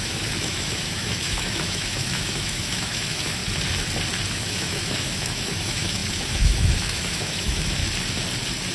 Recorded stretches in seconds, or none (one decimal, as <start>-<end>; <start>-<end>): 3.4-4.3; 7.8-8.7